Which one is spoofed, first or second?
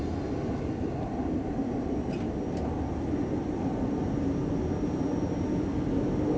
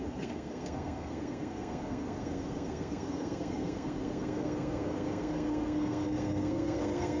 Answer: second